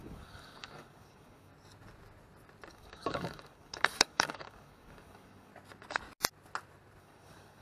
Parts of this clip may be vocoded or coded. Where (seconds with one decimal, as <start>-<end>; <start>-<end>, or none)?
0.0-1.5; 2.7-5.5; 7.0-7.6